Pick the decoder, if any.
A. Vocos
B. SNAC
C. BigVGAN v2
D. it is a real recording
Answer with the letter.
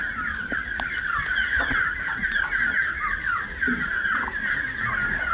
D